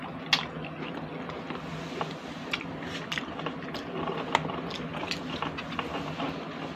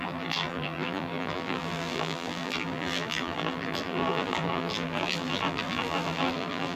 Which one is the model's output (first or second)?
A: second